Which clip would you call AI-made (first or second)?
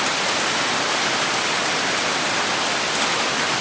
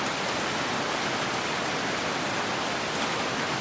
first